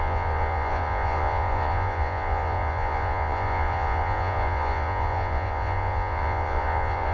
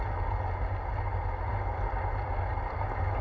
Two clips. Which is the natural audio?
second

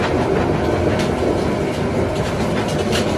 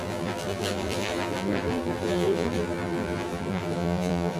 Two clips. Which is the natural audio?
first